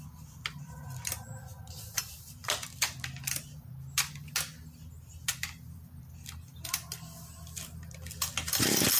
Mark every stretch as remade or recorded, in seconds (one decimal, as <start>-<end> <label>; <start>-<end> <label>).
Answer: 0.0-9.0 recorded